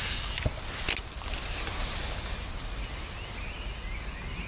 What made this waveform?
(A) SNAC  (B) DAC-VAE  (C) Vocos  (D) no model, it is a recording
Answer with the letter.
D